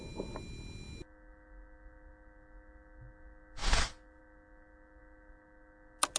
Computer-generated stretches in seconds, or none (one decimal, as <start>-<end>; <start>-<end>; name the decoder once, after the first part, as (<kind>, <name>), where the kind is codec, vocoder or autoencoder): none

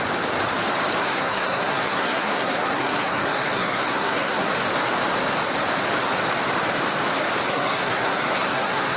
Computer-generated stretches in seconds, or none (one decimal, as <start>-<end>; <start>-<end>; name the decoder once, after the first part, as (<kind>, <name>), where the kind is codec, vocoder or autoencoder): 1.0-4.5 (codec, SNAC); 7.5-9.0

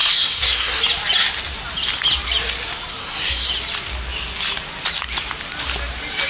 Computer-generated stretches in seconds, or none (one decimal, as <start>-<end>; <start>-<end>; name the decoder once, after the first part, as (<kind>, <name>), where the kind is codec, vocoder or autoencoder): 0.0-0.8 (codec, SNAC); 3.0-3.5

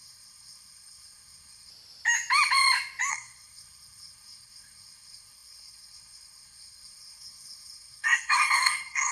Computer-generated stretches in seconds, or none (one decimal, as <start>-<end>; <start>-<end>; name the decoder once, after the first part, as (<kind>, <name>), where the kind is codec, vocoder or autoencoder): 0.0-1.7 (codec, SNAC); 3.1-9.1

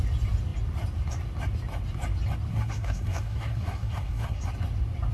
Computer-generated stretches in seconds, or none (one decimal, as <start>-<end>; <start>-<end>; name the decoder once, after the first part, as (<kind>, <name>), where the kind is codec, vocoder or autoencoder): 2.5-4.4 (codec, SNAC)

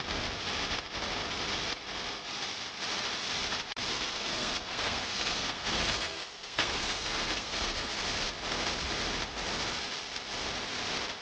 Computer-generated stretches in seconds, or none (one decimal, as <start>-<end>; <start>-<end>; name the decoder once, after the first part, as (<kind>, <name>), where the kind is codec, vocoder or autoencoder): 3.9-7.9 (codec, SNAC)

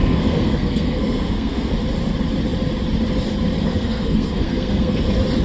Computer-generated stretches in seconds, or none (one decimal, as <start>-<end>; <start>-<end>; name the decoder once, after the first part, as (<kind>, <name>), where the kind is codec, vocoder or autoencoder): 0.0-1.7 (codec, SNAC); 3.6-5.0

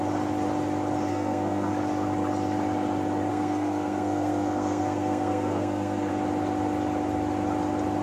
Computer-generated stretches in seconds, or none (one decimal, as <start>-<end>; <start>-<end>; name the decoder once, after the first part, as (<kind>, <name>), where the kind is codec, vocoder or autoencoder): 1.1-1.7 (codec, SNAC); 3.3-6.1